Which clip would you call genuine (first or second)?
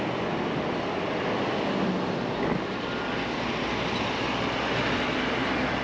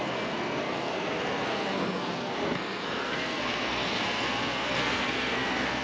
first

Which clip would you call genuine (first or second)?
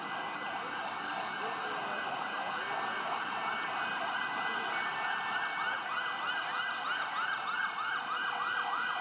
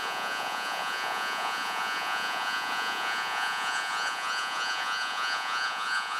first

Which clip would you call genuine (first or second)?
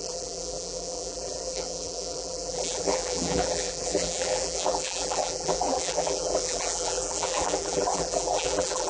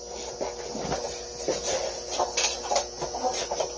second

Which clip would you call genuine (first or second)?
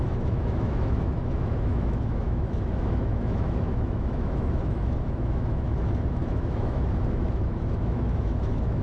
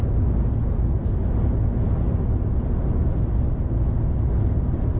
second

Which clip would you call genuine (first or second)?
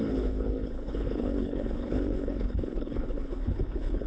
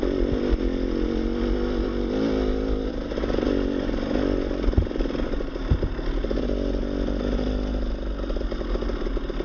second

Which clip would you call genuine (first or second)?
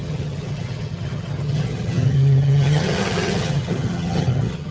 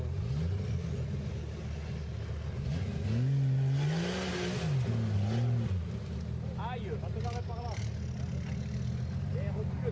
second